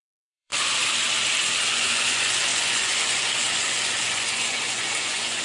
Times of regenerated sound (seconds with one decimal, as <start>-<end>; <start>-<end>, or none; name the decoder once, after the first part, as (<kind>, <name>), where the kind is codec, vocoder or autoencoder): 0.0-0.5 (vocoder, Vocos); 1.7-5.4